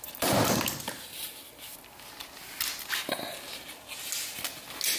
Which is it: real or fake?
real